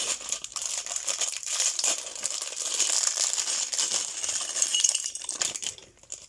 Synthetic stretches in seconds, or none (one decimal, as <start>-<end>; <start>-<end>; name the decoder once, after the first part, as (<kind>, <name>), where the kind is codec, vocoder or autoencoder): 0.5-2.6 (vocoder, BigVGAN v2); 4.7-5.7